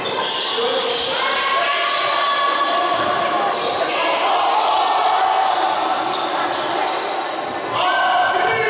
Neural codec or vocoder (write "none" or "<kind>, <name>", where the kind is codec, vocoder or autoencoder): none